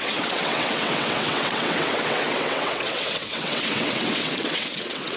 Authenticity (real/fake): fake